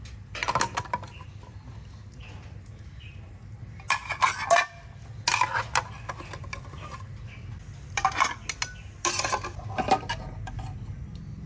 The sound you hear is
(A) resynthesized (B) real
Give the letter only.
B